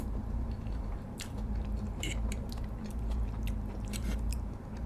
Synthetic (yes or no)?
yes